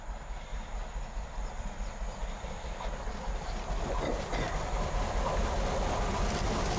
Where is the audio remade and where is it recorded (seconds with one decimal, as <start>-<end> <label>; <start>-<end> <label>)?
0.0-0.5 recorded; 0.5-4.6 remade; 4.6-6.8 recorded